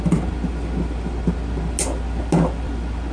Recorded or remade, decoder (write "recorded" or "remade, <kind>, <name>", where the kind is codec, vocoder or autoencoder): recorded